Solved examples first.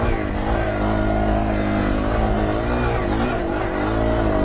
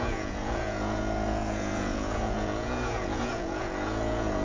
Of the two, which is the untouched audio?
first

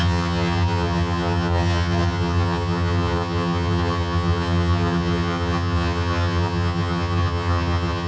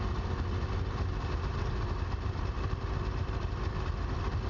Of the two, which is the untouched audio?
second